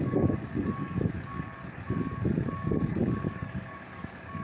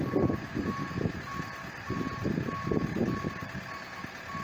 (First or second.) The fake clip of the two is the first